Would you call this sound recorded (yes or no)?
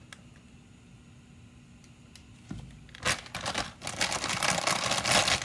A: yes